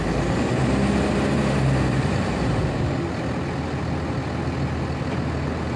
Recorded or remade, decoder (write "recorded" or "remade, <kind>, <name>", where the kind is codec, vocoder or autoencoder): recorded